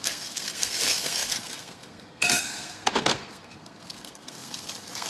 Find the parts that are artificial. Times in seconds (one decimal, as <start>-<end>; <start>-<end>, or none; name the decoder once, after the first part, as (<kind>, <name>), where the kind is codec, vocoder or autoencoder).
0.0-5.1 (codec, SNAC)